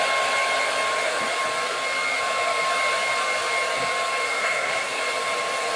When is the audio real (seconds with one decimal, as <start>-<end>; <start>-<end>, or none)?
0.0-4.4; 5.0-5.8